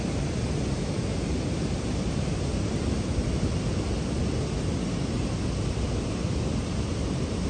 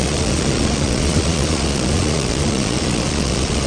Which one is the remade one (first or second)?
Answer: second